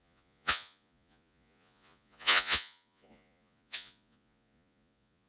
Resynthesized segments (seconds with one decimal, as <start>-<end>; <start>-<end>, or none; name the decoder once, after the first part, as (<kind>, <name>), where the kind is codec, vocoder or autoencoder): 0.0-5.3 (vocoder, Vocos)